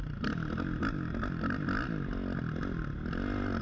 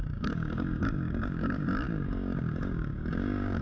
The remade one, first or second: second